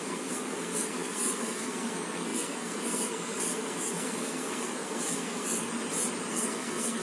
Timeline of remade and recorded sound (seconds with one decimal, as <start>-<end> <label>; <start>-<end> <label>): 0.0-5.7 remade; 5.7-6.3 recorded; 6.3-7.0 remade